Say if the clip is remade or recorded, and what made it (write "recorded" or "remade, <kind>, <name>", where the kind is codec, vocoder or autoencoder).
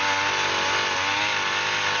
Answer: recorded